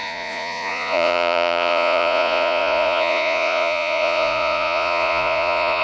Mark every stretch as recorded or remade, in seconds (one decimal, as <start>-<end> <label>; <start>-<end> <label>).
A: 0.0-5.8 remade